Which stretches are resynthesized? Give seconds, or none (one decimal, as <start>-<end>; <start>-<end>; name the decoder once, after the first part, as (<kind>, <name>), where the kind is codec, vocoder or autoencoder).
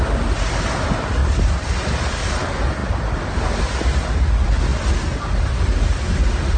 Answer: none